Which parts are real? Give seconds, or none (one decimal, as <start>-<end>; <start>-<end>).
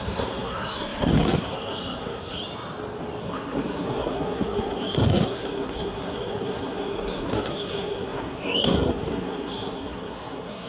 2.4-3.2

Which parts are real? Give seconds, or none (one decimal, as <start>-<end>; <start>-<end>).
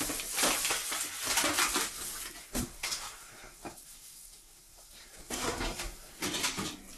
0.0-2.4; 6.2-7.0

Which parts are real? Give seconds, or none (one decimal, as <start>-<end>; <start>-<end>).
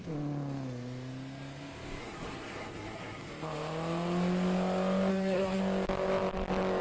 0.0-2.0; 3.3-5.1; 5.6-6.8